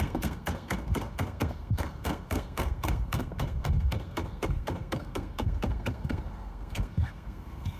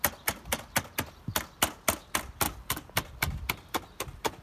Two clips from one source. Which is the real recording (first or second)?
second